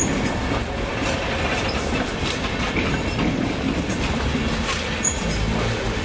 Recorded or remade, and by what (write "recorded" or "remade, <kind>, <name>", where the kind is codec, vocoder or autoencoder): recorded